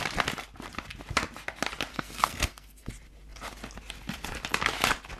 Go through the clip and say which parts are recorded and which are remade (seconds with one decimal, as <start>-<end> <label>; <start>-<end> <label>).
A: 0.0-1.9 recorded; 1.9-2.9 remade; 2.9-5.2 recorded